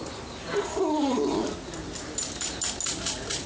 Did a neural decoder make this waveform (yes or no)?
no